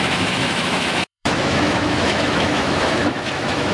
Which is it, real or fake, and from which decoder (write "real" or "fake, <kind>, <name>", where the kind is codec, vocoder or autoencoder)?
fake, autoencoder, DAC-VAE